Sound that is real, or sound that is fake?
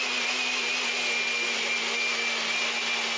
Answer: real